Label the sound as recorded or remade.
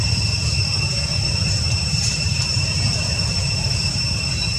remade